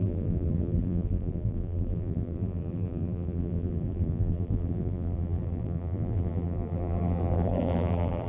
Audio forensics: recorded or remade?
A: remade